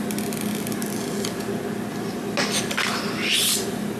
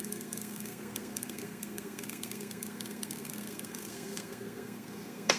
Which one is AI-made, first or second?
second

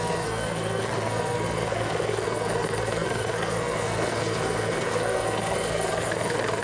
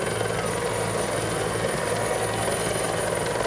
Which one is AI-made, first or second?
first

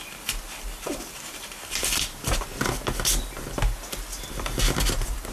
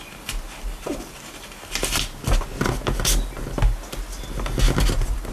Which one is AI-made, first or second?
first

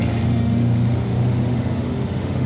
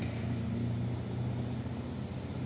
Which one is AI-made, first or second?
first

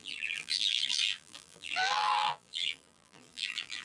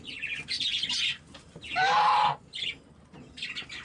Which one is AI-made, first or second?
first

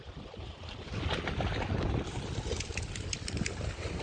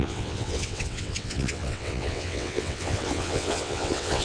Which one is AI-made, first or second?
second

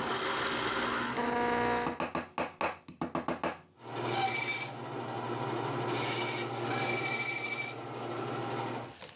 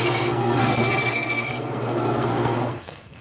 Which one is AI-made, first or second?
second